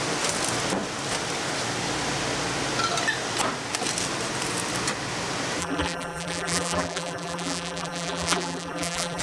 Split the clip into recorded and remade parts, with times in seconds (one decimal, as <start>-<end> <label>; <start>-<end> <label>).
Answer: 0.0-5.6 recorded; 5.6-9.2 remade